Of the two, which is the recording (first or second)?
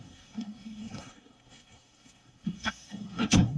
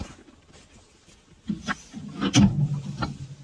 second